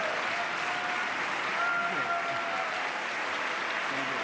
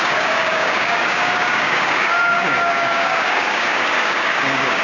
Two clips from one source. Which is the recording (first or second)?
first